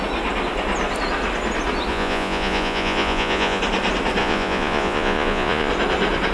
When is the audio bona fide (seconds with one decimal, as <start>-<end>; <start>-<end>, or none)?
0.0-1.9; 3.6-4.2; 5.7-6.3